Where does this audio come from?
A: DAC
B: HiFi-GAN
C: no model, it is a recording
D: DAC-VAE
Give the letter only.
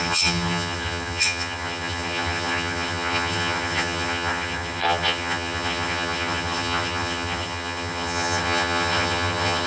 B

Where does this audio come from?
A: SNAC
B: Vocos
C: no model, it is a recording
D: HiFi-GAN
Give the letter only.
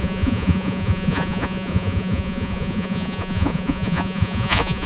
B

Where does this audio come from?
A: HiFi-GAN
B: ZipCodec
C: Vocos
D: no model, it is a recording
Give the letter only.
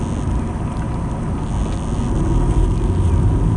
D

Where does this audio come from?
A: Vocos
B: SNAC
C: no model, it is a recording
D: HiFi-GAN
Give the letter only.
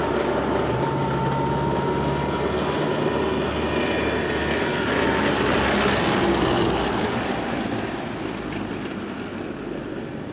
C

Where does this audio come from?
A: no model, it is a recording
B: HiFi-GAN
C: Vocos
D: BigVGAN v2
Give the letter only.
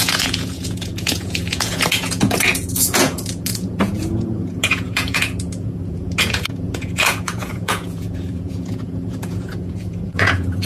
C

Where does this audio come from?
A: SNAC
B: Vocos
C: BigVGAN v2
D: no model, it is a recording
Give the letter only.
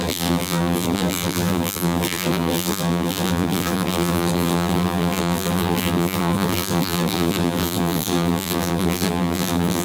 C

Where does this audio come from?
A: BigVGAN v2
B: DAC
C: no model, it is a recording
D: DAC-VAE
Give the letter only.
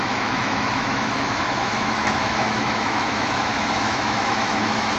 D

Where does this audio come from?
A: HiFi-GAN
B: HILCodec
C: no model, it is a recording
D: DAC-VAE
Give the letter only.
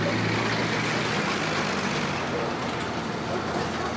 C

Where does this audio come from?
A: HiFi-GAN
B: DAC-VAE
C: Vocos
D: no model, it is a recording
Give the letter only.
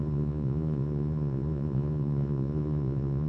C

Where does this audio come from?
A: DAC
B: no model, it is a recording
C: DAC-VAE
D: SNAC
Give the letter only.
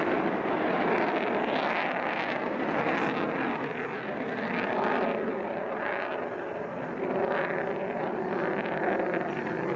B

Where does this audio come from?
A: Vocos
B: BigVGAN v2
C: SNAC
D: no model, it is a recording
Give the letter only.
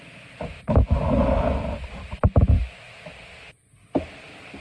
D